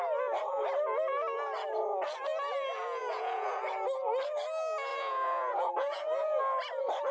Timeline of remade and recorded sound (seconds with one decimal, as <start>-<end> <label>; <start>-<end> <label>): 0.0-3.0 recorded; 3.0-3.6 remade; 3.6-4.9 recorded; 4.9-6.4 remade; 6.4-7.1 recorded